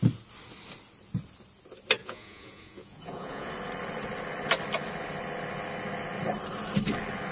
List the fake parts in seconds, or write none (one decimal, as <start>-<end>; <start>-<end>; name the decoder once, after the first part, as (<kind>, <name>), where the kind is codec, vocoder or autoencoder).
2.0-3.5 (vocoder, Vocos)